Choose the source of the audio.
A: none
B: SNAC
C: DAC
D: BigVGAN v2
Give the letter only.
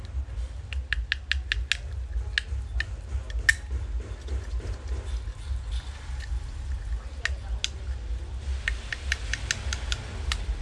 A